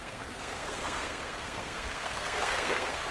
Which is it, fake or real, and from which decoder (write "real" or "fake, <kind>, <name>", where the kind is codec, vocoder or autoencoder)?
fake, codec, SNAC